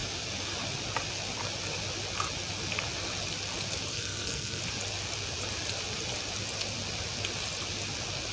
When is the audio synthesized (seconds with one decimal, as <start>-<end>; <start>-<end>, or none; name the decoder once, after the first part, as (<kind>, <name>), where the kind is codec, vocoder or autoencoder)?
3.9-4.6 (codec, SNAC)